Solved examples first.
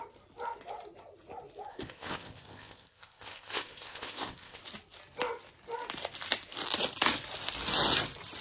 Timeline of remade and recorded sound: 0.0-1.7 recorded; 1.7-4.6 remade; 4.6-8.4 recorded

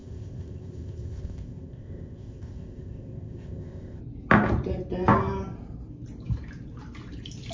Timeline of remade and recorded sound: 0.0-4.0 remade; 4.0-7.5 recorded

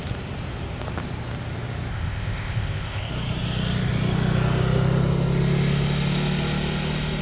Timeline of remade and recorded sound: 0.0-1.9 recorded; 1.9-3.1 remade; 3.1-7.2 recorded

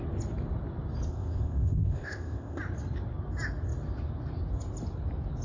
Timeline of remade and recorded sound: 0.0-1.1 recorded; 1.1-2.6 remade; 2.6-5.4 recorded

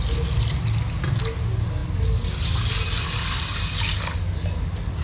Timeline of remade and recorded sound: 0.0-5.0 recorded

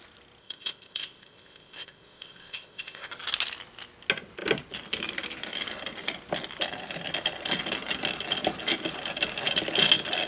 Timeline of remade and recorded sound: 0.0-0.4 recorded; 0.4-3.1 remade; 3.1-10.3 recorded

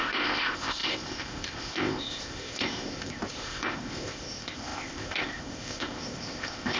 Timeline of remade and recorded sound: 0.0-6.8 remade